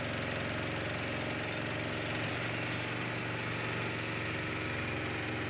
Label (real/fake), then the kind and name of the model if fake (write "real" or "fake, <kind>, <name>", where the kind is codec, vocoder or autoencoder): real